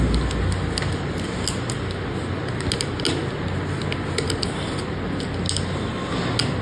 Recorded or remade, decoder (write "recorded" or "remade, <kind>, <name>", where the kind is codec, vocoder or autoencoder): recorded